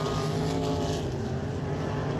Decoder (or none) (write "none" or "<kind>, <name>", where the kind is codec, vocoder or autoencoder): none